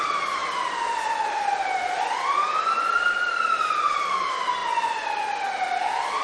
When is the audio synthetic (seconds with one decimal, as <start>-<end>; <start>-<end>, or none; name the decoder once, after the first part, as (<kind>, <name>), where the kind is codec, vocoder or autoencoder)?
0.4-4.1 (vocoder, BigVGAN v2)